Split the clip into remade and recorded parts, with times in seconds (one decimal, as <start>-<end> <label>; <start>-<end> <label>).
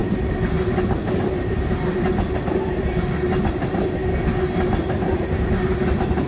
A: 0.0-6.3 recorded